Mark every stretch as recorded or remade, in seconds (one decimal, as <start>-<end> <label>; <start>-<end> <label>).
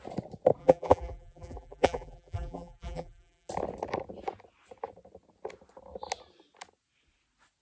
0.0-0.6 recorded; 0.6-3.5 remade; 3.5-7.6 recorded